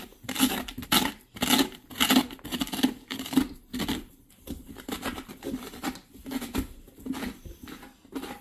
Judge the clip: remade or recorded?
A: recorded